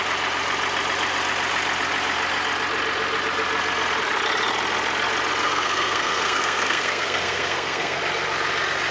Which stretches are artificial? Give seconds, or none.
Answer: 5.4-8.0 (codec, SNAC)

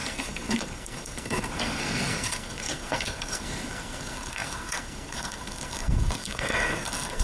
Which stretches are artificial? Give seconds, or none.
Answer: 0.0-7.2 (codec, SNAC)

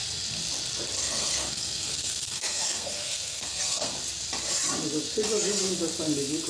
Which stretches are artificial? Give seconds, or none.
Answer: 1.0-3.9 (codec, SNAC)